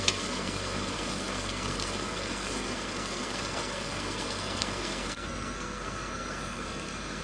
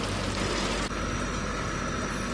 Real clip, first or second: second